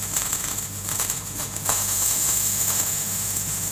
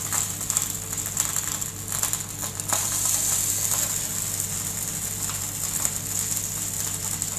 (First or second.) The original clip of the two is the second